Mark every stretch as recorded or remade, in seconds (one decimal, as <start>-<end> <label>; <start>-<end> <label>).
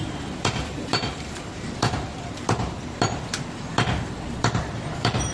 0.0-5.3 remade